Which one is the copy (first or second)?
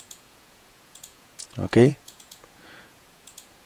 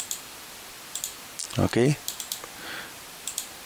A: first